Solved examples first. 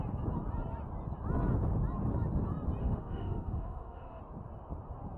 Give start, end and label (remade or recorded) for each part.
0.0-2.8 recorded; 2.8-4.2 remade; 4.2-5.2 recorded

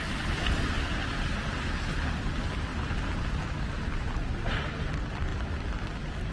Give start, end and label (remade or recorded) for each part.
0.0-6.3 recorded

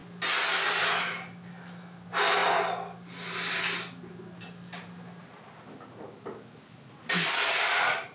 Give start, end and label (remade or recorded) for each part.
0.0-8.1 recorded

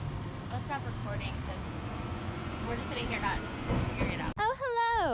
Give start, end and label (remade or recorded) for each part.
0.0-1.0 recorded; 1.0-3.9 remade; 3.9-5.1 recorded

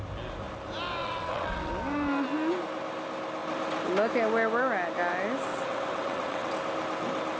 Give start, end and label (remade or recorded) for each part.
0.0-1.0 recorded; 1.0-1.7 remade; 1.7-5.5 recorded; 5.5-6.5 remade; 6.5-7.4 recorded

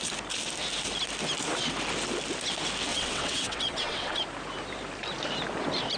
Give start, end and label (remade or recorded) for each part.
0.0-2.9 recorded; 2.9-4.2 remade; 4.2-6.0 recorded

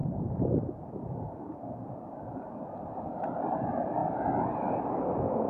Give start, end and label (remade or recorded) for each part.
0.0-3.0 remade; 3.0-5.5 recorded